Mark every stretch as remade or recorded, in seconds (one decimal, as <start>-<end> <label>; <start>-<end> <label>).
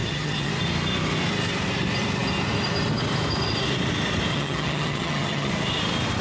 0.0-0.5 remade; 0.5-4.3 recorded; 4.3-5.5 remade; 5.5-6.2 recorded